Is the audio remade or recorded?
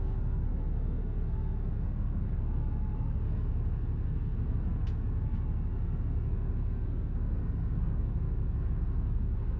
remade